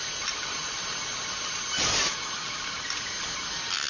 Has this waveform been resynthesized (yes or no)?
no